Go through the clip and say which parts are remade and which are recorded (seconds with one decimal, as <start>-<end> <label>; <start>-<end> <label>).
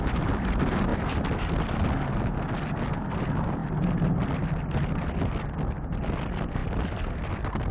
0.0-7.7 recorded